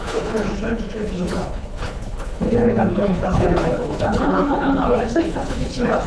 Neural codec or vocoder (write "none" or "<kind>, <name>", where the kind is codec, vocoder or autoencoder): codec, HILCodec